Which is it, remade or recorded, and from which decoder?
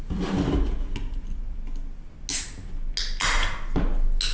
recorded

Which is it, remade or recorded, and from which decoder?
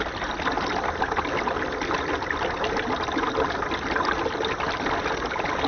recorded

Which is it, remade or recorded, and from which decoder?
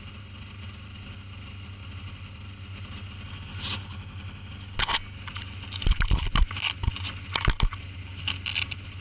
recorded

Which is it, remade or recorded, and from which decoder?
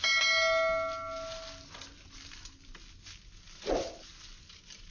recorded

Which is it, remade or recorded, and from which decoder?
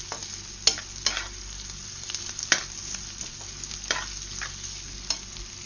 recorded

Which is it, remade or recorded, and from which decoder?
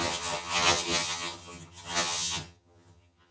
remade, vocoder, HiFi-GAN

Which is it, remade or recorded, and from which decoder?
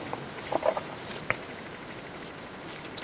recorded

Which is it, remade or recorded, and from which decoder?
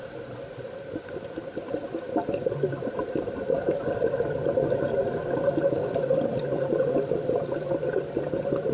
recorded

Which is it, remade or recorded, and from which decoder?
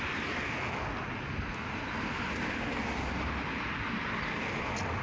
recorded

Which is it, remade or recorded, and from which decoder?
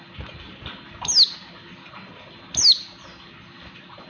recorded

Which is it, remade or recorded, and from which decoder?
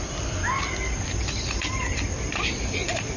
recorded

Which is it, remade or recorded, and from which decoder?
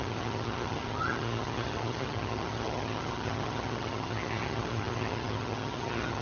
remade, vocoder, HiFi-GAN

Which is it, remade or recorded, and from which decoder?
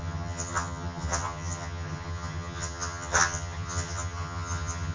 remade, vocoder, HiFi-GAN